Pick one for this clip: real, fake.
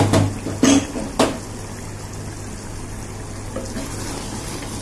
real